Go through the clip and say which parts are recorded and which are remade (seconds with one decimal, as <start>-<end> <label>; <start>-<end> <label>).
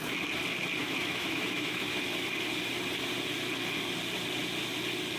0.0-0.8 recorded; 0.8-2.0 remade; 2.0-5.2 recorded